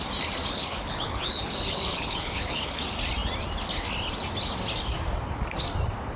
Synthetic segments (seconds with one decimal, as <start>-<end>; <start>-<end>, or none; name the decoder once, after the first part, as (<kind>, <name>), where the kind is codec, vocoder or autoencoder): 0.4-2.8 (codec, HILCodec)